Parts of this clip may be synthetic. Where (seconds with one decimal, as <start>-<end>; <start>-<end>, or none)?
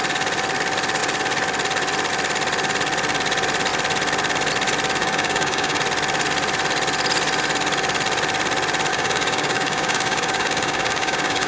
5.0-5.8; 8.9-11.5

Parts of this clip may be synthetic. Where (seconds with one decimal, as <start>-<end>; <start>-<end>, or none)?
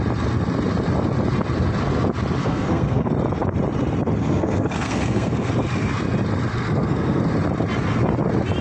2.4-3.1; 4.2-5.5; 6.5-7.2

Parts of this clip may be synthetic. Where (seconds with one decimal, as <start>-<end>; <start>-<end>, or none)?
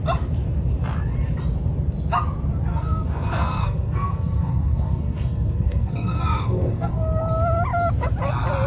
2.7-6.9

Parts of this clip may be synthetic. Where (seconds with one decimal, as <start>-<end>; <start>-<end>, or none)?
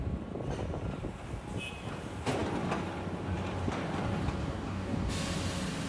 4.4-5.1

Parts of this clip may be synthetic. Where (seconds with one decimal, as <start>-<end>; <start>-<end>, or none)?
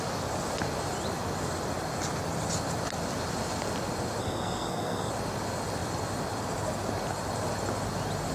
4.2-5.1